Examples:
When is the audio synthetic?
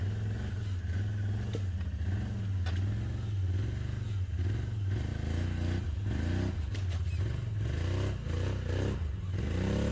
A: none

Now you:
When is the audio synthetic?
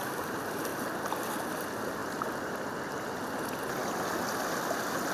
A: 0.7-1.4; 2.0-3.3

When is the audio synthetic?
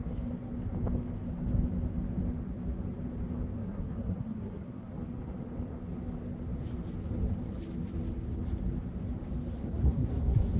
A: 3.6-4.9; 9.6-10.6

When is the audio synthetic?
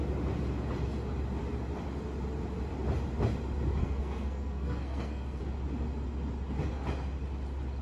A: 3.8-5.4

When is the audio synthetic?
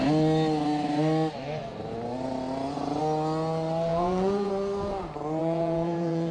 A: 3.9-4.5; 5.4-6.3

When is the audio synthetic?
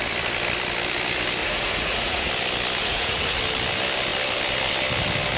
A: 1.4-2.3; 2.8-3.4